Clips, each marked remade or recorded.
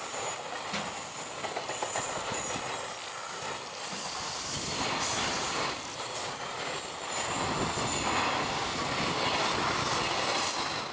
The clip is recorded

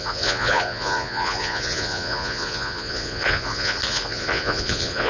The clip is remade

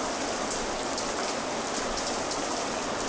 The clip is recorded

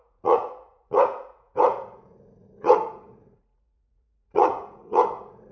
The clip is remade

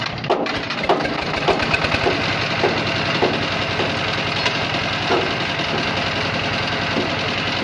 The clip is recorded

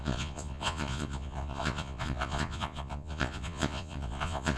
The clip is remade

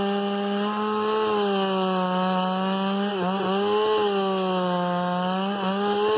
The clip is recorded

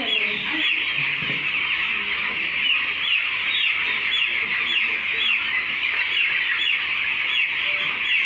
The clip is recorded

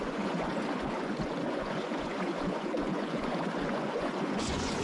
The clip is remade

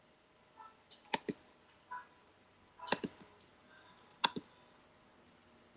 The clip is recorded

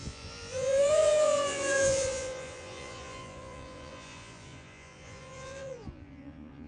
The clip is remade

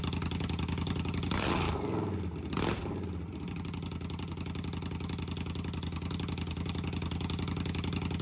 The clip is recorded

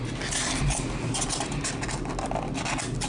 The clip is recorded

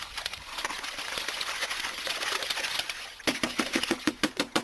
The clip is remade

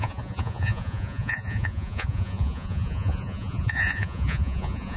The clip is remade